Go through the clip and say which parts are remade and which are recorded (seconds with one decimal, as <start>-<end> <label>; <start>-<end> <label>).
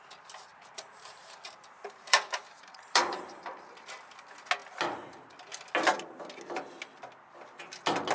0.0-0.5 recorded; 0.5-3.5 remade; 3.5-8.1 recorded